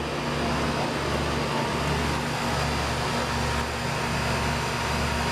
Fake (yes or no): no